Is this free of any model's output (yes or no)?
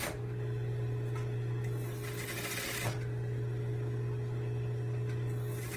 yes